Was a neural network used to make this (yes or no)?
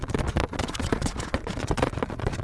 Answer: yes